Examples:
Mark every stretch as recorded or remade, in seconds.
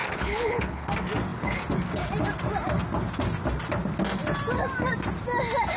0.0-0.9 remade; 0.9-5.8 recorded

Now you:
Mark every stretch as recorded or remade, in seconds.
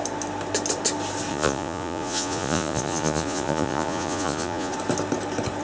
0.0-1.3 recorded; 1.3-4.7 remade; 4.7-5.6 recorded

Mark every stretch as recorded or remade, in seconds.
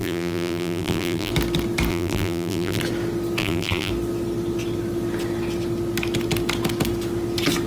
0.0-1.3 remade; 1.3-1.9 recorded; 1.9-2.8 remade; 2.8-3.4 recorded; 3.4-3.9 remade; 3.9-7.7 recorded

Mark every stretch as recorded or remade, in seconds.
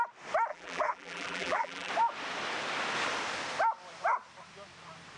0.0-0.5 recorded; 0.5-1.9 remade; 1.9-5.2 recorded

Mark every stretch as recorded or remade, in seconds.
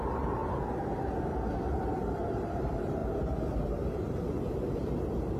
0.0-0.4 remade; 0.4-1.6 recorded; 1.6-5.4 remade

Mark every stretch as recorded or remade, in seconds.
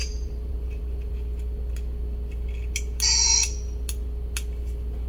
0.0-1.1 remade; 1.1-5.1 recorded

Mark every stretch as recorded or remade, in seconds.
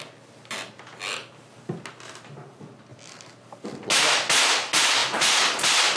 0.0-6.0 recorded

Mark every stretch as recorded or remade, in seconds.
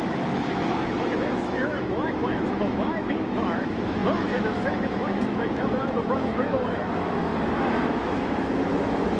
0.0-7.3 remade; 7.3-7.9 recorded; 7.9-9.2 remade